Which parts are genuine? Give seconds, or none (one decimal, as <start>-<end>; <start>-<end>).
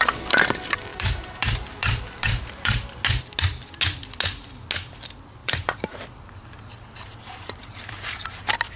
0.0-0.9; 2.9-5.4; 6.7-8.8